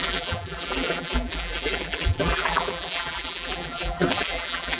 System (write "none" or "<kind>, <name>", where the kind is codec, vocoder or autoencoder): vocoder, BigVGAN v2